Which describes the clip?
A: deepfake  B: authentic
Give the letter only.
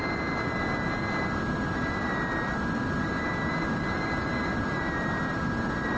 B